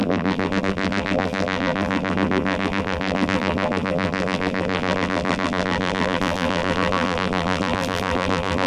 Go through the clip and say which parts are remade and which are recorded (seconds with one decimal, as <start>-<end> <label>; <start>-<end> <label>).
0.0-8.7 remade